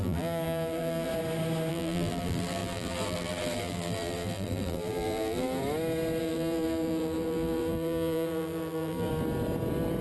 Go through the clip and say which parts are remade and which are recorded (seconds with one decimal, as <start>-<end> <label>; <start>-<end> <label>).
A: 0.0-1.1 remade; 1.1-1.7 recorded; 1.7-5.6 remade; 5.6-6.2 recorded; 6.2-9.1 remade; 9.1-10.0 recorded